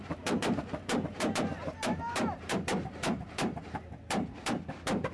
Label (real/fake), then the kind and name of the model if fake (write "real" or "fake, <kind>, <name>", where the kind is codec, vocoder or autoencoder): fake, vocoder, BigVGAN v2